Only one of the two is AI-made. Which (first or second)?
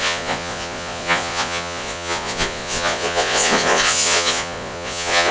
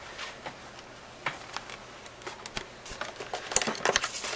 first